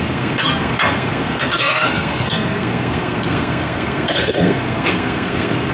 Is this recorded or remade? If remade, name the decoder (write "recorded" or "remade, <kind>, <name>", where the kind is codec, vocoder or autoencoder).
remade, codec, SNAC